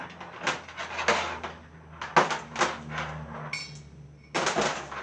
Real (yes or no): yes